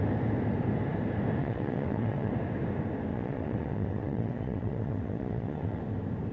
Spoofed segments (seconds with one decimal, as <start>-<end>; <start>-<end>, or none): 1.4-2.3; 3.1-5.8